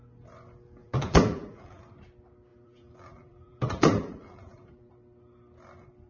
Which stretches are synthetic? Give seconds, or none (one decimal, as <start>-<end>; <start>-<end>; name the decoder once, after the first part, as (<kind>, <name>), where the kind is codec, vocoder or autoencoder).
0.8-1.9 (vocoder, BigVGAN v2); 2.5-4.9